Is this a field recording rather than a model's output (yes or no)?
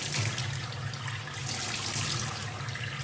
yes